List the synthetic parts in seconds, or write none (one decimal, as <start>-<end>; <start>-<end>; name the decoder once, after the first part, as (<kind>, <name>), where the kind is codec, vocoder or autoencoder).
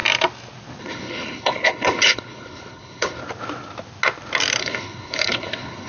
0.8-3.2 (codec, HILCodec); 4.6-5.9